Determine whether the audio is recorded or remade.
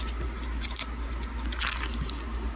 recorded